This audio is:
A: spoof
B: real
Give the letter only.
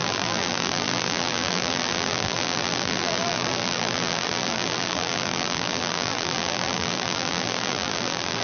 A